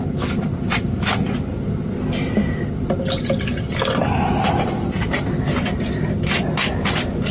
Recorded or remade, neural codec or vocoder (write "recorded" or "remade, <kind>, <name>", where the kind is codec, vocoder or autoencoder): recorded